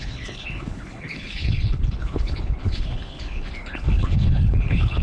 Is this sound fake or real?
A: fake